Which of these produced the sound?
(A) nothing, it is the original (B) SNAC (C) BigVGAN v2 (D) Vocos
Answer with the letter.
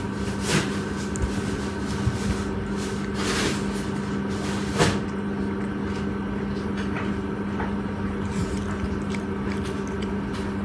A